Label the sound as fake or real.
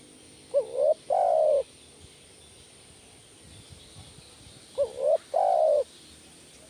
real